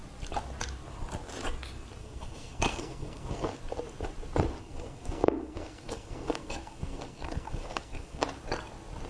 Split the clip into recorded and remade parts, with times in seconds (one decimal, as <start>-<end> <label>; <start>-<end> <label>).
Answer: 0.0-2.0 recorded; 2.0-3.6 remade; 3.6-4.6 recorded; 4.6-8.2 remade; 8.2-9.1 recorded